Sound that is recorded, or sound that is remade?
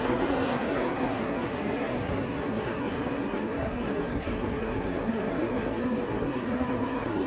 remade